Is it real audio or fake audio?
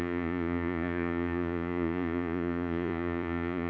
fake